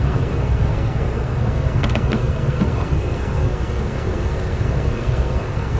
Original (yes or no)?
no